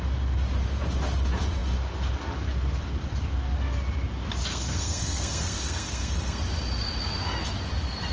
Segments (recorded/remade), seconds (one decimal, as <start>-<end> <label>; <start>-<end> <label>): 0.0-4.5 recorded; 4.5-6.4 remade; 6.4-8.1 recorded